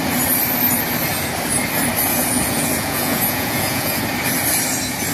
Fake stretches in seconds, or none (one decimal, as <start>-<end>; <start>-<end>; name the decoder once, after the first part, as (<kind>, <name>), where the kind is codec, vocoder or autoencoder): 2.1-4.0 (vocoder, Vocos)